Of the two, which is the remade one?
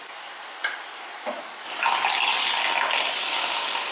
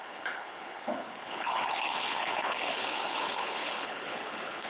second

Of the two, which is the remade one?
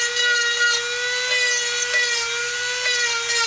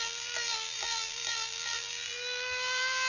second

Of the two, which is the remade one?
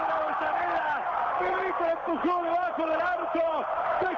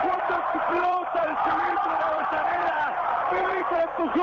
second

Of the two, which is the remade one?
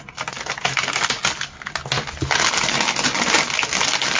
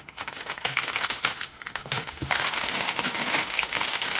second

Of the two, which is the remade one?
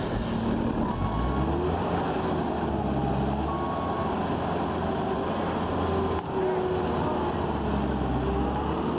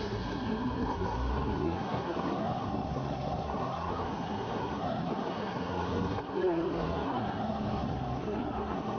second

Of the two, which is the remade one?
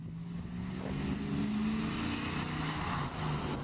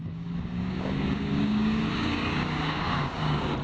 second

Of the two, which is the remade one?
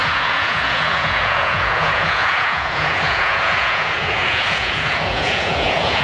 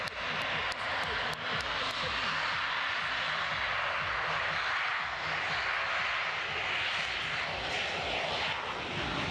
first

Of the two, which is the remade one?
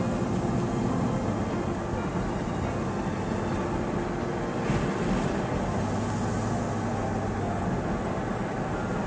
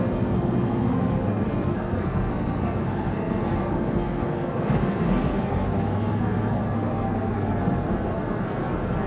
second